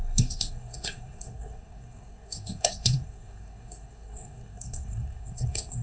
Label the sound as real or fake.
fake